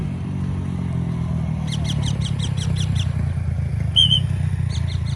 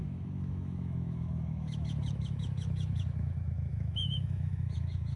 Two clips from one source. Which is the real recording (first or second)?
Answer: first